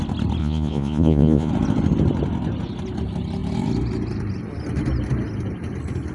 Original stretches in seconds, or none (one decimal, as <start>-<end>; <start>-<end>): 0.0-0.4; 1.5-6.1